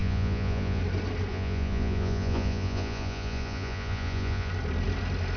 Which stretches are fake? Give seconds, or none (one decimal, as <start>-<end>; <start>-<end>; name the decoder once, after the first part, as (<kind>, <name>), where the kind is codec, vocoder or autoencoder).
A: 0.0-0.8 (vocoder, Vocos); 1.3-4.5